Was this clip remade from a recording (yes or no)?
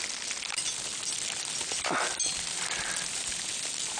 no